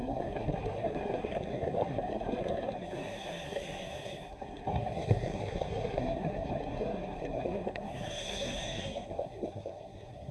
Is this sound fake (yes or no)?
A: yes